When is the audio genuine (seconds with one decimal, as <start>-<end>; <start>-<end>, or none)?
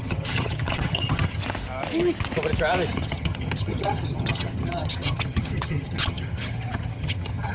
1.4-2.9